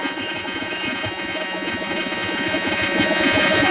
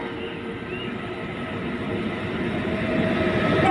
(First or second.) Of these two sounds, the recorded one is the second